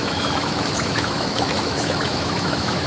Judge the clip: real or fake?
fake